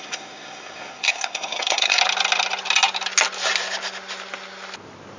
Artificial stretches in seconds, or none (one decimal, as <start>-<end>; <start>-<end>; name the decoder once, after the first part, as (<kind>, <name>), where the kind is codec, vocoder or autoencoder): 0.0-2.0 (codec, SNAC)